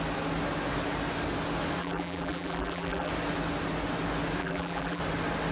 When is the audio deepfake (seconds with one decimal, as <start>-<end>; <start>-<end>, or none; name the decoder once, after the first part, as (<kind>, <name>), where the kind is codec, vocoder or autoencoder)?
1.8-3.1 (vocoder, BigVGAN v2); 4.4-5.0